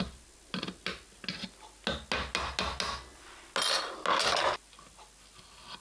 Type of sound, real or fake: real